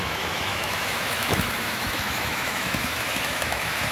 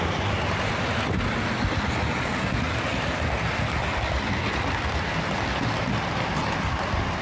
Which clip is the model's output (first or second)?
first